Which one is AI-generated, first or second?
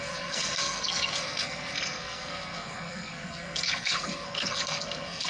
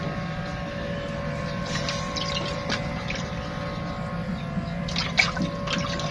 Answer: first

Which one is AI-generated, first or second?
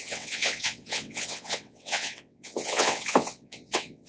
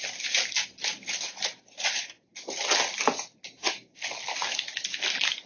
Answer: first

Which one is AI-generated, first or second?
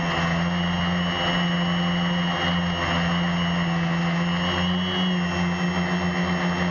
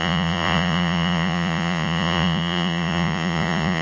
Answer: second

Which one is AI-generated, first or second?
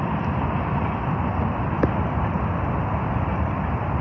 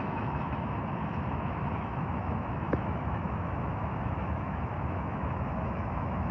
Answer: second